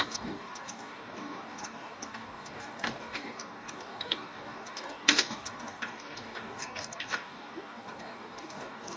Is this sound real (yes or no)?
no